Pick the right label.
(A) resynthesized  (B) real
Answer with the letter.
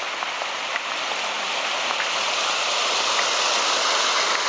B